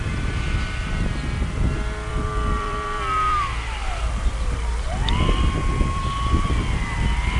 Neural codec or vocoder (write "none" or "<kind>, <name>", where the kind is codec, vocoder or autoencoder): vocoder, BigVGAN v2